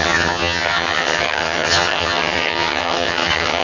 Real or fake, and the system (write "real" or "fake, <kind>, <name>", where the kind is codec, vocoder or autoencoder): fake, vocoder, HiFi-GAN